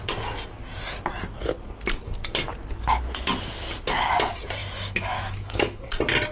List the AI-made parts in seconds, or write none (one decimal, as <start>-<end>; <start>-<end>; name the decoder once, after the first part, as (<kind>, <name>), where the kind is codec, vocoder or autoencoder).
4.6-5.8 (autoencoder, DAC-VAE)

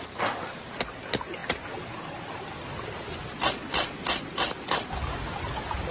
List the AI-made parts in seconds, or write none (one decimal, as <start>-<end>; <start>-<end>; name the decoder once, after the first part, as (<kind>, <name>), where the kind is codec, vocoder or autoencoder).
none

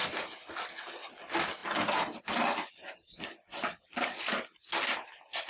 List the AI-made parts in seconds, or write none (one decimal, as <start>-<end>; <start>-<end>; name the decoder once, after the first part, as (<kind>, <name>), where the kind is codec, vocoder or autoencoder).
none

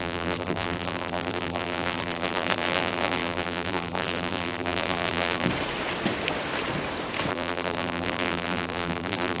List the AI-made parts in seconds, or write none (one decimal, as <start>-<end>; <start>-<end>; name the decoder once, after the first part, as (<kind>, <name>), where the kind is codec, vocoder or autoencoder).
0.0-5.5 (vocoder, BigVGAN v2); 7.3-9.4

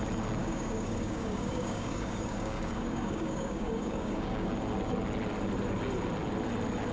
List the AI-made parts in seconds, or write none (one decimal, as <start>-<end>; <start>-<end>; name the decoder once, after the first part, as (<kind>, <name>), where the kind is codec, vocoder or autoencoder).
0.4-4.5 (codec, DAC)